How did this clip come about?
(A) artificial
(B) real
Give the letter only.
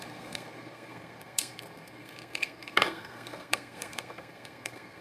A